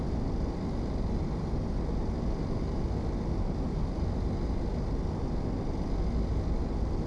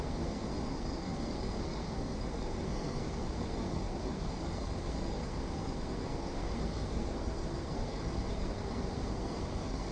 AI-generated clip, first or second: second